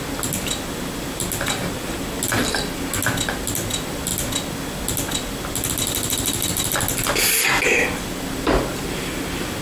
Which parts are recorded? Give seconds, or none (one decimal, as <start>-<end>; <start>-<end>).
0.0-9.6